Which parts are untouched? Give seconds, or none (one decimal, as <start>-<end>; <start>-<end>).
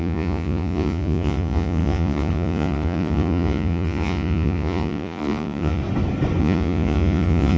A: 5.8-6.4